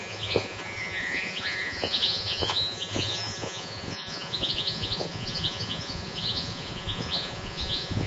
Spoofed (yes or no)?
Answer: yes